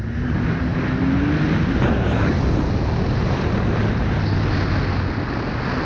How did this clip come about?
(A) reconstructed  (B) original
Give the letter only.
B